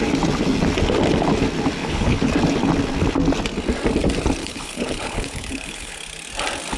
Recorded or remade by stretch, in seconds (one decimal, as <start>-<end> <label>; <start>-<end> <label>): 0.0-1.8 recorded; 1.8-2.3 remade; 2.3-4.4 recorded; 4.4-6.0 remade; 6.0-6.8 recorded